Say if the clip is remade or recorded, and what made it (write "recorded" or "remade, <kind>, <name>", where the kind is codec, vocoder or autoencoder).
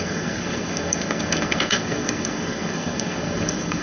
remade, codec, SNAC